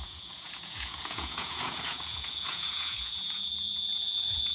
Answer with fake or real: fake